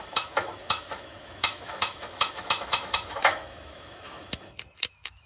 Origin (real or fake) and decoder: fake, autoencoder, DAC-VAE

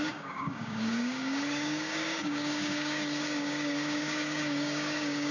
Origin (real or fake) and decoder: fake, codec, DAC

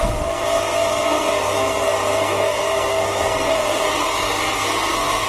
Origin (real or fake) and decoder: fake, codec, SNAC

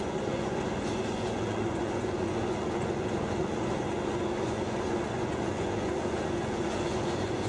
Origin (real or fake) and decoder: fake, vocoder, Vocos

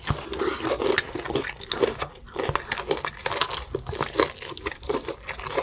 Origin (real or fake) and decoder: real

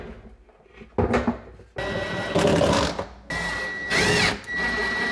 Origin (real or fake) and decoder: real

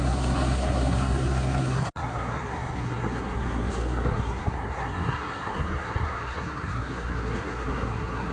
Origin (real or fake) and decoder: fake, codec, SNAC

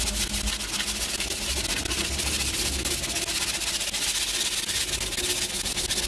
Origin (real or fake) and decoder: real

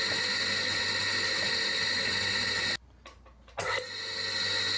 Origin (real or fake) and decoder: real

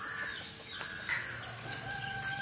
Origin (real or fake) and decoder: real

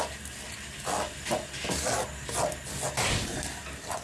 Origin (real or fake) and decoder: real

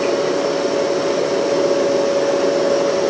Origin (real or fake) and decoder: real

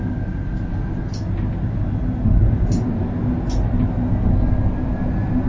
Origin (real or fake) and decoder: real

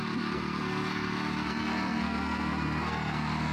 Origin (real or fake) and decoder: fake, codec, SNAC